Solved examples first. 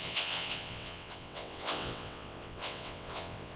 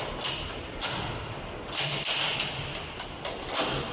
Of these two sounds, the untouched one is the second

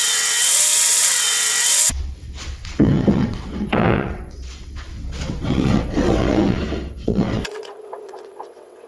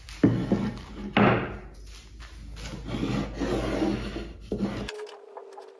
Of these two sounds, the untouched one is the second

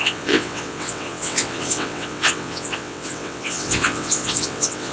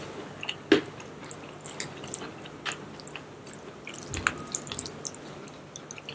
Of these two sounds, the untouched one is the second